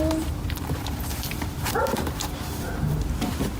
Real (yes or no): no